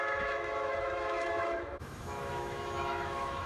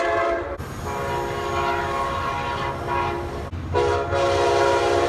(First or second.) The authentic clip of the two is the second